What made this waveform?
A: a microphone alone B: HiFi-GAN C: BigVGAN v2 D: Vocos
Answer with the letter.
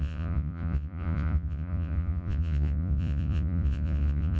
D